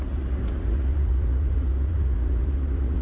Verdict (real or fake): fake